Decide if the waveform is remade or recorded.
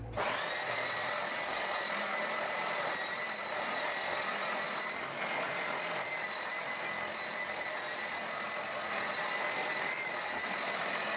recorded